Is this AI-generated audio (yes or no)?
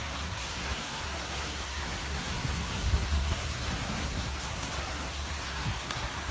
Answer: yes